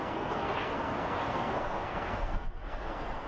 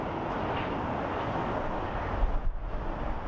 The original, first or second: second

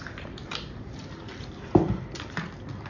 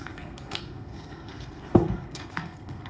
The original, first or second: first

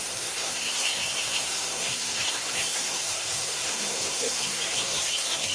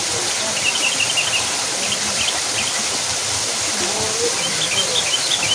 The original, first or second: second